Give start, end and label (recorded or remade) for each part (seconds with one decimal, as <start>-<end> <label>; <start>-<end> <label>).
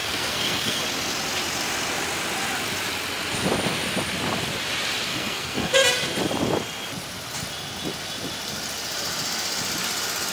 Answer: 0.0-0.8 remade; 0.8-5.1 recorded; 5.1-5.7 remade; 5.7-10.3 recorded